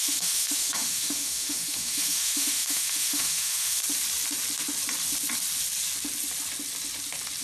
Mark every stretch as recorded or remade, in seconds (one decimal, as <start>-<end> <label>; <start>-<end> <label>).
0.0-3.8 remade; 3.8-7.4 recorded